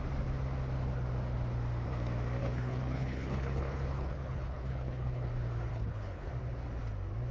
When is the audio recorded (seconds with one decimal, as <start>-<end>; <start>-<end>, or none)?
0.0-2.4; 5.3-5.7; 6.3-7.3